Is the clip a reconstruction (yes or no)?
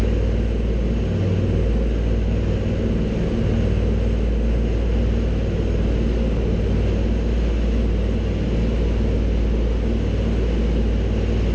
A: no